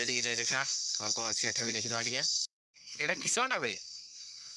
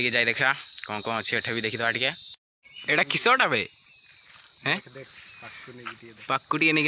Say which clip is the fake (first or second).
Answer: first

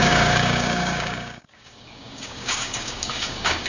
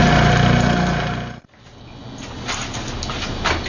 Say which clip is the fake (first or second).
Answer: first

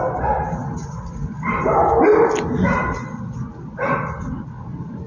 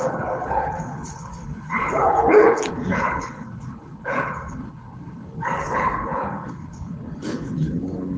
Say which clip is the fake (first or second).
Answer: second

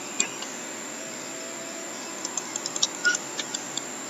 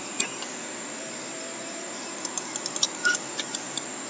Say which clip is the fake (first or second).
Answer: second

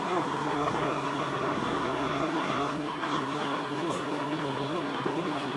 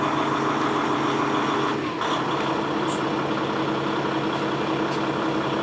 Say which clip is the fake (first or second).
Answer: first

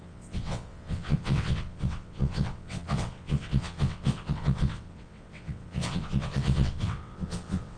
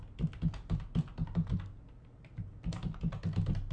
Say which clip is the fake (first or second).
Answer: first